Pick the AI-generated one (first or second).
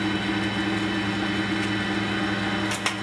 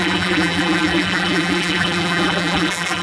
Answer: second